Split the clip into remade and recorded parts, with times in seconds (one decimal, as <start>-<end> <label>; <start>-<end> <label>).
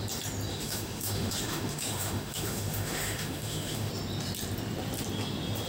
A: 0.0-0.5 recorded; 0.5-3.9 remade; 3.9-5.7 recorded